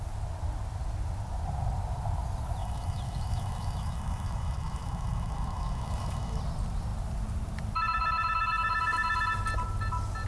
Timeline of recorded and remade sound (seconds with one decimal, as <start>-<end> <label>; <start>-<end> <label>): 0.0-2.6 recorded; 2.6-6.4 remade; 6.4-10.3 recorded